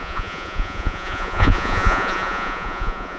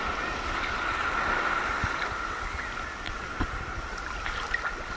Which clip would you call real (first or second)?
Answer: second